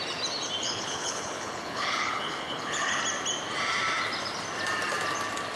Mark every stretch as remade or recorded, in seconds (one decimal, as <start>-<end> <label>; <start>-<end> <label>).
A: 0.0-0.6 recorded; 0.6-3.0 remade; 3.0-5.6 recorded